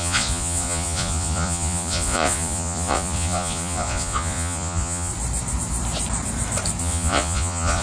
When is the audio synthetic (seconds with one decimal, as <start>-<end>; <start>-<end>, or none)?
0.0-5.1; 6.8-7.8